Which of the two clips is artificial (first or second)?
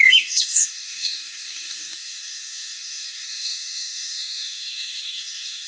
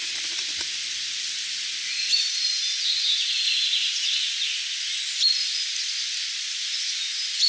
first